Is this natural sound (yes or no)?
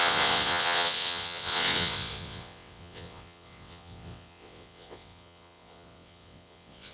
no